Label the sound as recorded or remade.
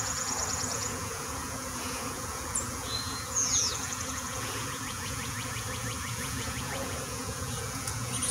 remade